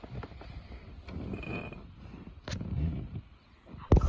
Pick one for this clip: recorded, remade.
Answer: recorded